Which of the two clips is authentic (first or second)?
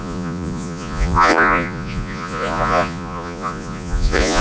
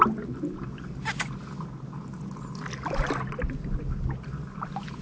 second